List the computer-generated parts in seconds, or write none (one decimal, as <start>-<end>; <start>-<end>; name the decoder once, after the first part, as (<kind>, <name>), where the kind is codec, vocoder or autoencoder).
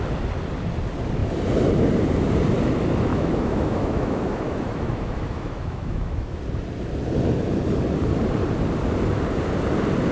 3.1-6.4 (autoencoder, DAC-VAE)